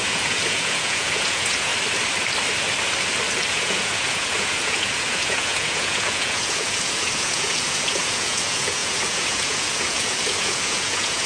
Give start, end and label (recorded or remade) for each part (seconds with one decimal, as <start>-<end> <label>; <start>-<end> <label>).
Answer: 0.0-1.7 remade; 1.7-3.5 recorded; 3.5-11.3 remade